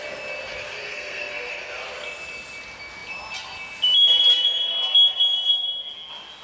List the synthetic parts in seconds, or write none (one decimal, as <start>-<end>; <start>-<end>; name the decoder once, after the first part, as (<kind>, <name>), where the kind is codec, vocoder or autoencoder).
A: 0.8-1.5 (codec, SNAC)